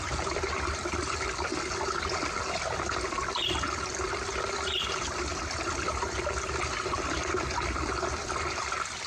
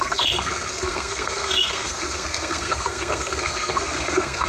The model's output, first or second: second